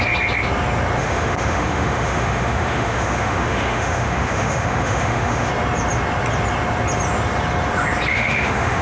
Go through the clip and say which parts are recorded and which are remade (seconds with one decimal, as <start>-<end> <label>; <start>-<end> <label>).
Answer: 0.0-1.0 recorded; 1.0-5.5 remade; 5.5-8.1 recorded; 8.1-8.8 remade